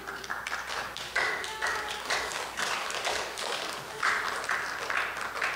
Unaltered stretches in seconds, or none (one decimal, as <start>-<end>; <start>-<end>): 0.0-0.7; 4.1-5.6